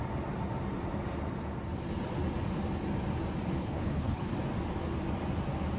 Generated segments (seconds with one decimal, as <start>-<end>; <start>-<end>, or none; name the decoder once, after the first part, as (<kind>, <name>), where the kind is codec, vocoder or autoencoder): 3.6-4.3 (codec, HILCodec)